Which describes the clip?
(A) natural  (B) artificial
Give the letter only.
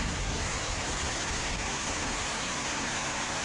B